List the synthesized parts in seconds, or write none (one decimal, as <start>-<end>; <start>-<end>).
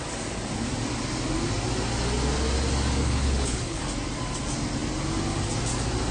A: 3.0-3.8